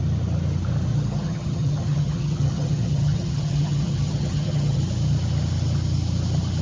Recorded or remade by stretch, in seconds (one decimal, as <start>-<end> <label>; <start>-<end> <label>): 0.0-0.9 recorded; 0.9-4.8 remade; 4.8-6.6 recorded